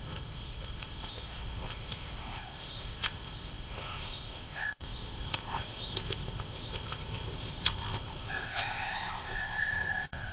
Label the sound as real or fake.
fake